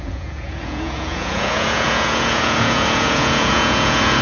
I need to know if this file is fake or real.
fake